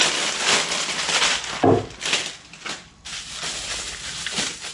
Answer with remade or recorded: recorded